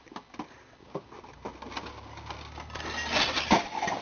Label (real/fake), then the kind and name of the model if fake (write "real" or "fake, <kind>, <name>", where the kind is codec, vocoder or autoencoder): real